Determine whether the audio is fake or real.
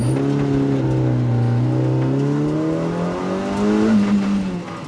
real